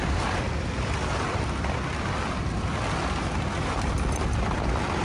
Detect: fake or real real